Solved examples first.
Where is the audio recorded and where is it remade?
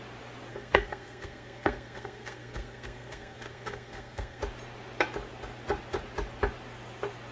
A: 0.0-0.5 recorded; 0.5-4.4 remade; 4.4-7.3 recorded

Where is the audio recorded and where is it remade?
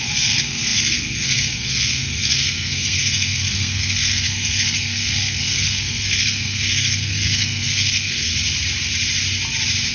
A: 0.0-8.3 remade; 8.3-9.9 recorded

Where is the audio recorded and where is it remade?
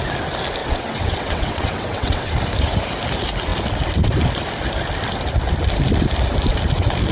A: 0.0-0.6 recorded; 0.6-2.3 remade; 2.3-7.1 recorded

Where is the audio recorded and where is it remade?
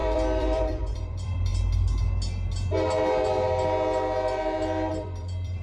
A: 0.0-1.5 remade; 1.5-4.9 recorded; 4.9-5.6 remade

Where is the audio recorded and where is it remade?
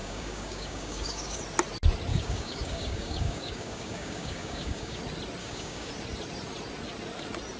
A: 0.0-1.4 remade; 1.4-2.1 recorded; 2.1-5.0 remade; 5.0-5.4 recorded; 5.4-5.9 remade; 5.9-7.6 recorded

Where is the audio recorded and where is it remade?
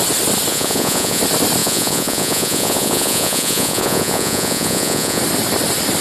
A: 0.0-0.5 recorded; 0.5-1.2 remade; 1.2-1.6 recorded; 1.6-5.2 remade; 5.2-6.0 recorded